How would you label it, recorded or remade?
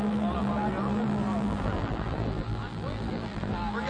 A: remade